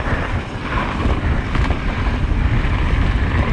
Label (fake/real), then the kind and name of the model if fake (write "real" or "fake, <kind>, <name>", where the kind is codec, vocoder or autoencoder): real